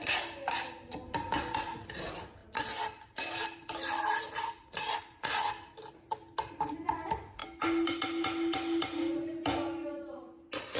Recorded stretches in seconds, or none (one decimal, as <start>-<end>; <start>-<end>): 0.0-10.8